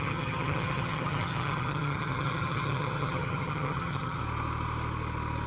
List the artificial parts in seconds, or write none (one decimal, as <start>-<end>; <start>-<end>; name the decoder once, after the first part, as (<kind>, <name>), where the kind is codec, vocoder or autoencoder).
0.0-4.2 (vocoder, HiFi-GAN)